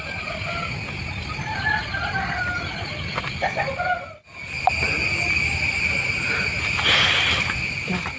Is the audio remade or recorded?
recorded